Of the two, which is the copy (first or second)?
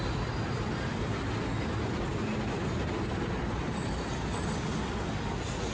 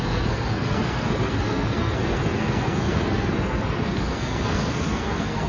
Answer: second